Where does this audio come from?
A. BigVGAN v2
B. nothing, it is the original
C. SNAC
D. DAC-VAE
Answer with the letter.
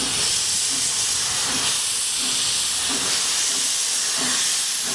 B